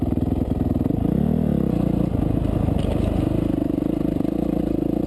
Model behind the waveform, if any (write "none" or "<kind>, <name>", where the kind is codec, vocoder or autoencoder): none